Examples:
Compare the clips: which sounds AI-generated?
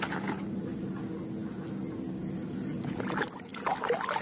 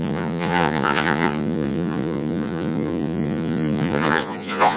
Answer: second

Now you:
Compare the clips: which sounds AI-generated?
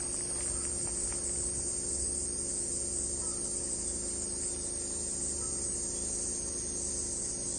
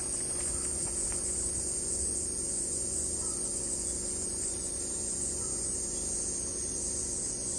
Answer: second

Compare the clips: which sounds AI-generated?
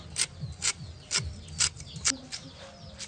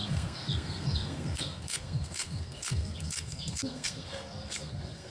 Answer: second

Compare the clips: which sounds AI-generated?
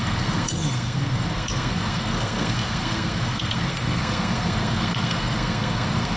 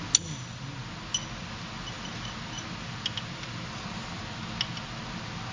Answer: first